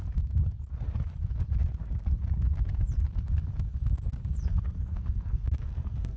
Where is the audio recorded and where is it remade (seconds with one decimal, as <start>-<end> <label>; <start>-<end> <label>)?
0.0-4.5 recorded; 4.5-6.2 remade